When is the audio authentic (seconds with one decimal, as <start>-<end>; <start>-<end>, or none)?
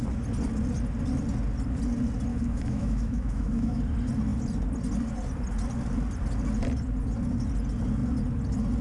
0.0-2.3; 3.8-8.8